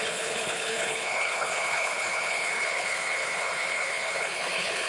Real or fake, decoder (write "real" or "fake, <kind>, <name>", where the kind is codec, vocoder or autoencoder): fake, codec, HILCodec